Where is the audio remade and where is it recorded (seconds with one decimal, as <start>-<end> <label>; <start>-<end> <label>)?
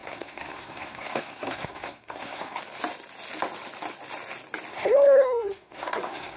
0.0-2.6 remade; 2.6-4.7 recorded; 4.7-6.4 remade